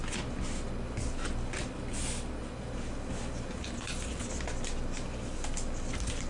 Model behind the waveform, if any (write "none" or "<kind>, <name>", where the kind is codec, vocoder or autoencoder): none